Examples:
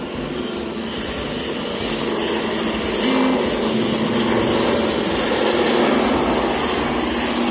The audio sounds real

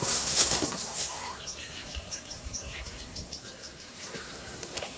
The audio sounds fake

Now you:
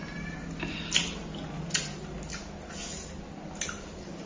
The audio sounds real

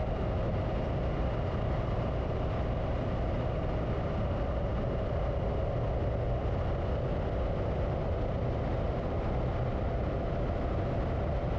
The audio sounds real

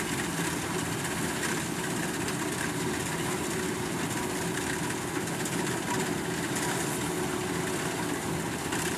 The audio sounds real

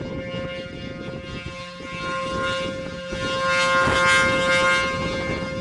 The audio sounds real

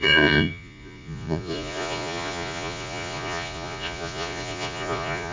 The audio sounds fake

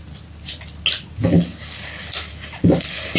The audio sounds real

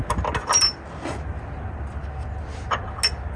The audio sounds real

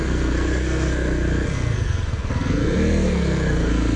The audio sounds fake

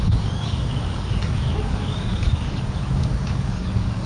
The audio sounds fake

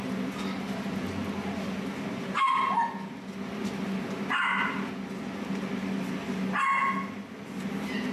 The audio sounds real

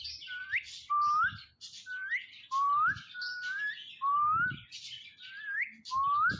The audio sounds real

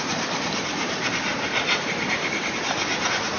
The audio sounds real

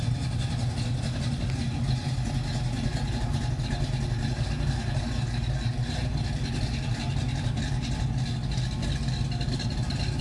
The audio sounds real